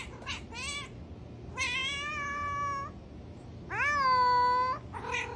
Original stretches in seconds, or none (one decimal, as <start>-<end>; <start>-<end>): 0.0-5.4